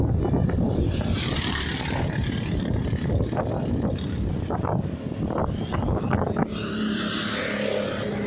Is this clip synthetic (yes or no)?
no